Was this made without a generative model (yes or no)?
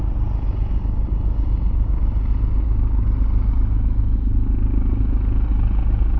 yes